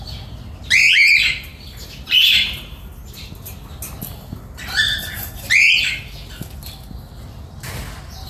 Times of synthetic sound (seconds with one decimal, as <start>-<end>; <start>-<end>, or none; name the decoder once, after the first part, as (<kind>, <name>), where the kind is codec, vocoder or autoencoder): none